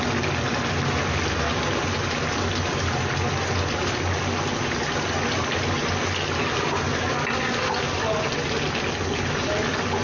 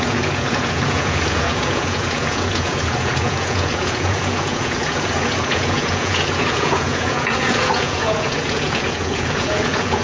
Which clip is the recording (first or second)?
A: first